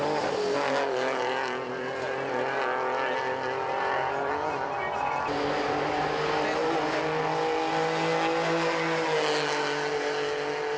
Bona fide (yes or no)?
yes